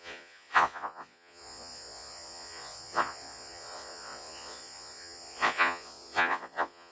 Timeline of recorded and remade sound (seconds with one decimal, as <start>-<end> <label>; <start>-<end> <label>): 0.0-6.9 remade